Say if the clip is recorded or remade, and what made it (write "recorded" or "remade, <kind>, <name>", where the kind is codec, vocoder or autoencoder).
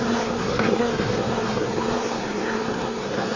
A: remade, codec, SNAC